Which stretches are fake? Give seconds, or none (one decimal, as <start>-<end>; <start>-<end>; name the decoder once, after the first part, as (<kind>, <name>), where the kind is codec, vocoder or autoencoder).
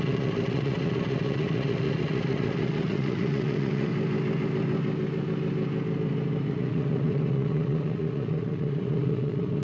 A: 0.0-3.9 (vocoder, Vocos); 6.5-9.6